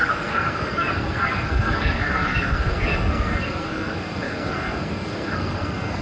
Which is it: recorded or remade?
remade